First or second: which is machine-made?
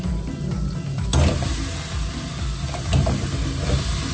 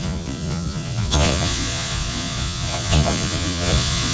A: second